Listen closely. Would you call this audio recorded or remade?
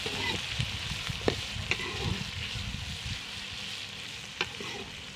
recorded